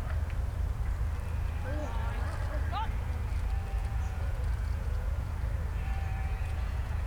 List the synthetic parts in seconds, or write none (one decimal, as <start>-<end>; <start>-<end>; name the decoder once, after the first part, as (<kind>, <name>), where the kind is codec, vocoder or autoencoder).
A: 3.8-5.3 (vocoder, Vocos); 6.1-7.1